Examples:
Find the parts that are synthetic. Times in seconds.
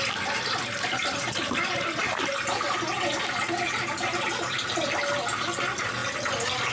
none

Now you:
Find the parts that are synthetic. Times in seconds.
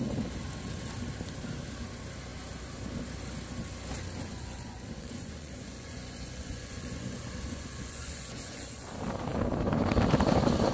4.3-8.9 (vocoder, Vocos)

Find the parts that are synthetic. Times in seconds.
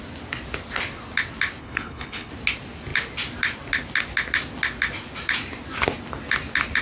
1.6-2.3 (codec, HILCodec)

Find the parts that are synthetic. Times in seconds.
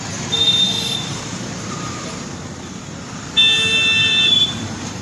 0.4-3.4 (vocoder, BigVGAN v2); 4.0-5.0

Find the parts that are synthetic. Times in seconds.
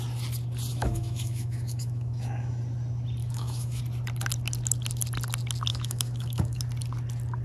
0.7-2.6 (autoencoder, DAC-VAE); 3.2-3.8; 5.7-6.6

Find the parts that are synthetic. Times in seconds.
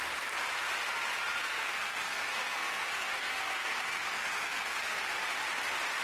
1.4-5.0 (codec, SNAC)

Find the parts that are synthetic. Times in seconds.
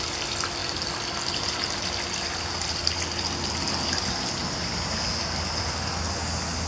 none